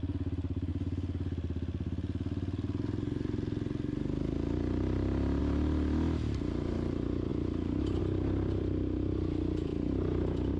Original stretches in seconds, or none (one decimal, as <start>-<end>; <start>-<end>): 0.0-10.6